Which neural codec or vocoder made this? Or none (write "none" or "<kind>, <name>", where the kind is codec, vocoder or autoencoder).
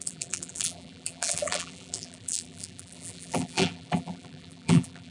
vocoder, BigVGAN v2